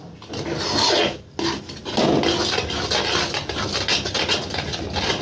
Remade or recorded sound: recorded